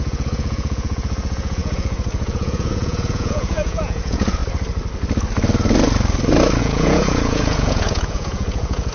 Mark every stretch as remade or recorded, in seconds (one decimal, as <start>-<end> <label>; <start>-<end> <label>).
0.0-4.4 remade; 4.4-6.6 recorded; 6.6-8.9 remade